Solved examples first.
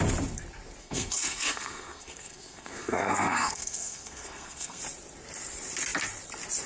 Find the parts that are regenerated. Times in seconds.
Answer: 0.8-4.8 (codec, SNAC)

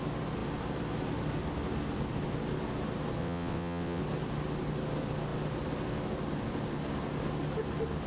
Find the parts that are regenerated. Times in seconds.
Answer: 3.2-4.0 (vocoder, WaveNeXt)

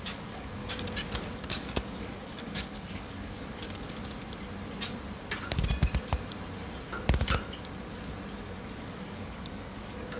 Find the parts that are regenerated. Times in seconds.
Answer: 0.0-0.6 (codec, DAC); 1.4-4.0; 8.8-10.2